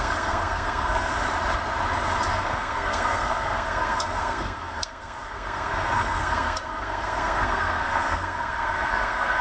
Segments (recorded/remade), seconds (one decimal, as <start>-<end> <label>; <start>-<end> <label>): 0.0-1.1 remade; 1.1-2.3 recorded; 2.3-9.4 remade